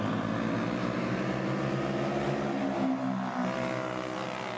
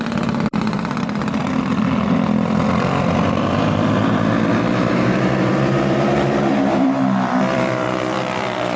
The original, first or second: first